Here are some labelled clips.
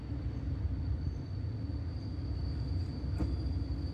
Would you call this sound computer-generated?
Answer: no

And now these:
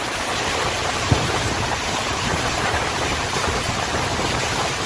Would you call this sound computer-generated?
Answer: yes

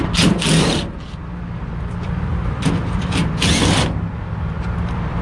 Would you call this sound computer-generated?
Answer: yes